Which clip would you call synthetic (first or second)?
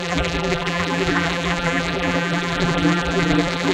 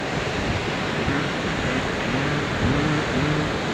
first